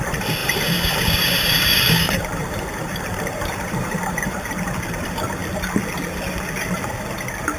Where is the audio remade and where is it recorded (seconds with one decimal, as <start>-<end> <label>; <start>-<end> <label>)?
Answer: 0.0-0.4 recorded; 0.4-4.5 remade; 4.5-7.6 recorded